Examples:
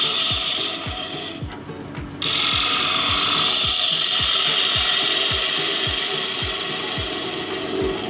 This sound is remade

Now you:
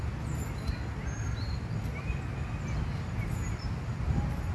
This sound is recorded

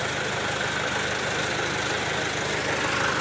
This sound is recorded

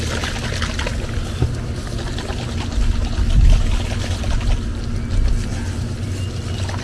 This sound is recorded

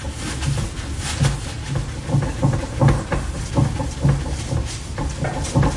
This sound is recorded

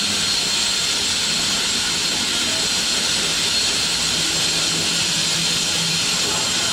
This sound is recorded